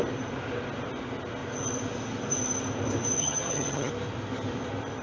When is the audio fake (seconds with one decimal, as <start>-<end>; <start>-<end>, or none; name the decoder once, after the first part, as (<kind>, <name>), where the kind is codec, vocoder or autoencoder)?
3.2-3.9 (vocoder, HiFi-GAN)